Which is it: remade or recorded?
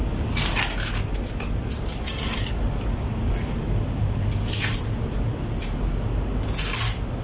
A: recorded